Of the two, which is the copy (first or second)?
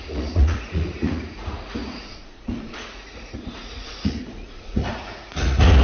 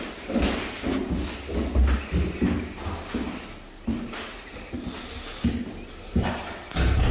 first